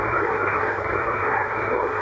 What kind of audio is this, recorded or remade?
remade